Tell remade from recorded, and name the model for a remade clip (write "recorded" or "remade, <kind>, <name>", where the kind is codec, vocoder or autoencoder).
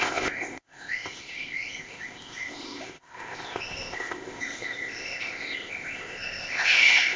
remade, codec, ZipCodec